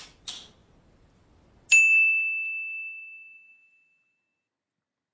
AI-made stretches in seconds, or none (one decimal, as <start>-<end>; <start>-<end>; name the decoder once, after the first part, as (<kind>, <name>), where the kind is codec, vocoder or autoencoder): none